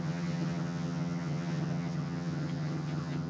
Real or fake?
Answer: fake